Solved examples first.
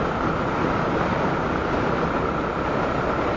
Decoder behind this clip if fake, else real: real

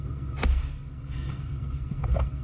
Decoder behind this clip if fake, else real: fake, codec, SNAC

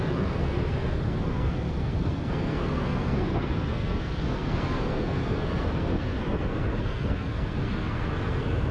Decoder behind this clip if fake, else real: fake, codec, SNAC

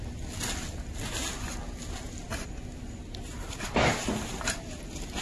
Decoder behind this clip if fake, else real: real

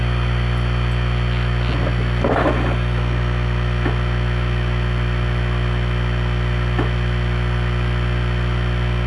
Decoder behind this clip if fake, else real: real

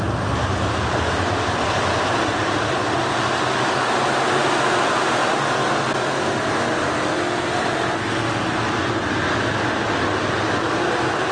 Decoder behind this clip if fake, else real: real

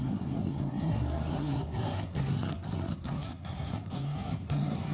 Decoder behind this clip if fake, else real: fake, codec, SNAC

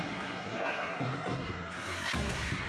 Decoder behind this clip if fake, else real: fake, codec, SNAC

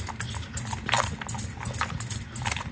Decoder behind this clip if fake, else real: real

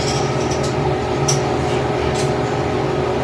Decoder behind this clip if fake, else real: real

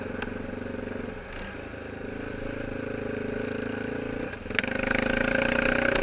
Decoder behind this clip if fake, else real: real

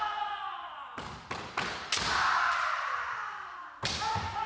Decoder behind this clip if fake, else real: real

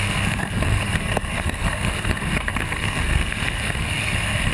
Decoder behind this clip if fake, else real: fake, codec, SNAC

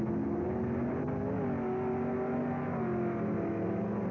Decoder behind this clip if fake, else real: real